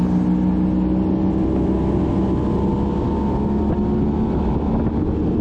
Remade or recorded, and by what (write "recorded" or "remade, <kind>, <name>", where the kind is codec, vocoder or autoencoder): recorded